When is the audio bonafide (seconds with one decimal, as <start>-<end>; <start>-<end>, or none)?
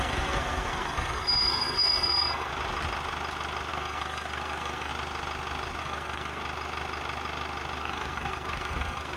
2.5-3.7; 4.9-5.8; 6.4-7.8